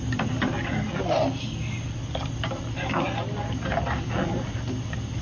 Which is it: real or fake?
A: real